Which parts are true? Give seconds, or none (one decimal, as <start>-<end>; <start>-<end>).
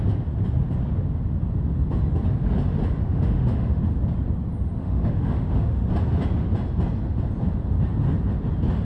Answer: 0.0-3.0; 3.8-4.8; 5.9-8.8